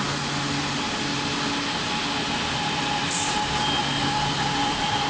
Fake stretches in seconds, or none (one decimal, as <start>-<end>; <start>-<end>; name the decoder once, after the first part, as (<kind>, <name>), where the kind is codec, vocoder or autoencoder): none